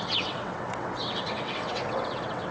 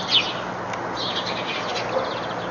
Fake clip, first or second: first